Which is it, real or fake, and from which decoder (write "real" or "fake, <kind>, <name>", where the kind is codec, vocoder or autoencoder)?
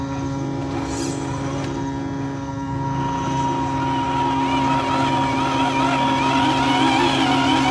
real